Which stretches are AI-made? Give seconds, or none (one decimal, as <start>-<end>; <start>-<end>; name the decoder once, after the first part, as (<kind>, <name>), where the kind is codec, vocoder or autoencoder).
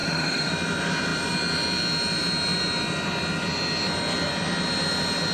0.0-0.5 (autoencoder, DAC-VAE)